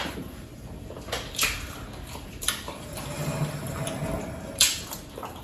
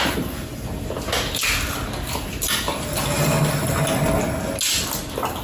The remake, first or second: first